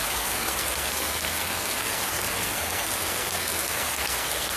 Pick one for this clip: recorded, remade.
remade